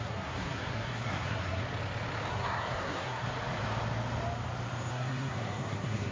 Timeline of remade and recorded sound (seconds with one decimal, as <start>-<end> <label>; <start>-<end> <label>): 0.0-1.6 remade; 1.6-2.3 recorded; 2.3-3.3 remade; 3.3-4.9 recorded; 4.9-6.1 remade